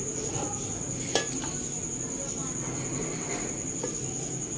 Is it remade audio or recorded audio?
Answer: recorded